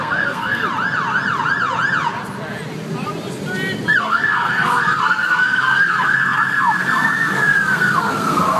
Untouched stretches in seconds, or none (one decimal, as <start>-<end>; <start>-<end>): 0.6-4.0